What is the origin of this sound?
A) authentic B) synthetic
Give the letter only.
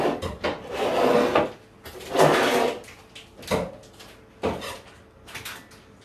A